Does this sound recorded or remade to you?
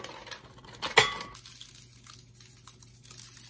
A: recorded